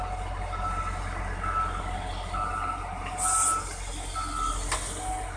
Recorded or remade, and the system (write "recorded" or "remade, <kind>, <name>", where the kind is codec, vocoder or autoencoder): recorded